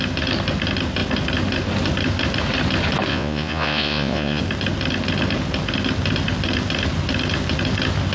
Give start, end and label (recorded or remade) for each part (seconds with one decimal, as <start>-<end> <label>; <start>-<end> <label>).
0.0-3.1 recorded; 3.1-4.4 remade; 4.4-8.1 recorded